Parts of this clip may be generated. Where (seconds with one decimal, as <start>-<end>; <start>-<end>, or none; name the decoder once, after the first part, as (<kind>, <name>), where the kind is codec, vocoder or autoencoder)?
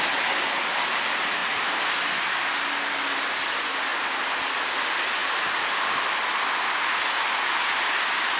none